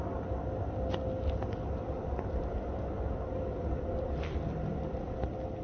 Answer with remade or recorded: recorded